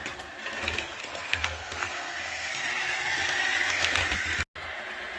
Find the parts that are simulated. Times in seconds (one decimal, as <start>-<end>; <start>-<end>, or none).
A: 1.0-2.5; 3.6-4.0